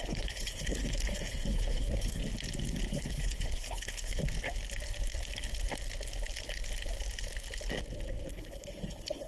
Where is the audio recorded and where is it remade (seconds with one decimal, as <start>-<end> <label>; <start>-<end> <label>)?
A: 0.0-2.2 remade; 2.2-2.9 recorded; 2.9-4.2 remade; 4.2-8.3 recorded; 8.3-9.3 remade

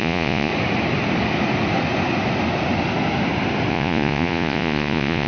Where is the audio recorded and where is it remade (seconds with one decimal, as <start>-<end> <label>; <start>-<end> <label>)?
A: 0.0-0.5 remade; 0.5-3.7 recorded; 3.7-5.3 remade

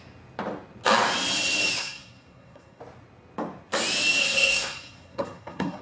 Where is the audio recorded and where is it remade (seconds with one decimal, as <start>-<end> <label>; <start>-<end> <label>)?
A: 0.0-1.8 recorded; 1.8-2.8 remade; 2.8-4.2 recorded; 4.2-5.8 remade

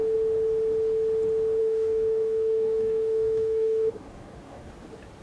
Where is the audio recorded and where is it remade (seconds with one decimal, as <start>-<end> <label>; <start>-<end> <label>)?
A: 0.0-1.6 recorded; 1.6-4.7 remade; 4.7-5.2 recorded

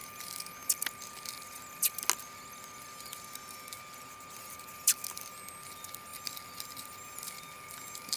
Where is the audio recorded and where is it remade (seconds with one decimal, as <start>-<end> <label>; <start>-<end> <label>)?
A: 0.0-8.2 recorded

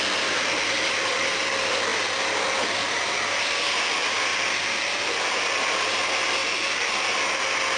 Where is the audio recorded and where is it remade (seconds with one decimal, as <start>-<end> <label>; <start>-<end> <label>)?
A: 0.0-4.3 remade; 4.3-5.6 recorded; 5.6-6.4 remade; 6.4-6.9 recorded; 6.9-7.8 remade

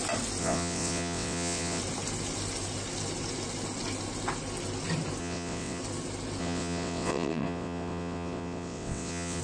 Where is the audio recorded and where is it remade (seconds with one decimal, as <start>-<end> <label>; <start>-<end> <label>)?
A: 0.0-0.4 recorded; 0.4-1.8 remade; 1.8-5.2 recorded; 5.2-5.8 remade; 5.8-6.4 recorded; 6.4-9.4 remade